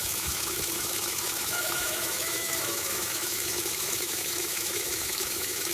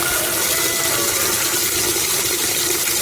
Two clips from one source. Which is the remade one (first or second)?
first